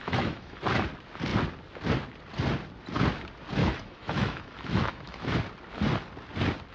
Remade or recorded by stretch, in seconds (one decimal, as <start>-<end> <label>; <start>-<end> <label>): 0.0-0.6 remade; 0.6-3.6 recorded; 3.6-5.4 remade; 5.4-6.7 recorded